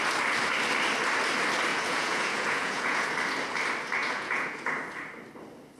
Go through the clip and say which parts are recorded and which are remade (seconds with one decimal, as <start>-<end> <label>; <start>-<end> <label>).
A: 0.0-1.7 recorded; 1.7-3.1 remade; 3.1-4.0 recorded; 4.0-4.7 remade; 4.7-5.8 recorded